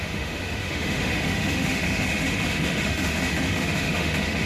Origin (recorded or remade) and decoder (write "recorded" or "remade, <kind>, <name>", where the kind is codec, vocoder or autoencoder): remade, autoencoder, DAC-VAE